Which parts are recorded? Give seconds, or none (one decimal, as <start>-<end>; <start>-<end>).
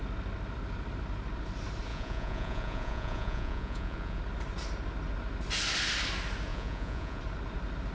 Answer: 0.0-1.9; 4.2-6.5; 7.2-7.9